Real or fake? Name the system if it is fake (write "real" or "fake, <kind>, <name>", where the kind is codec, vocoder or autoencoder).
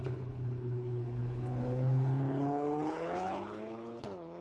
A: fake, codec, HILCodec